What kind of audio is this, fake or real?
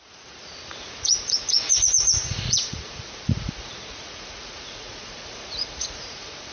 fake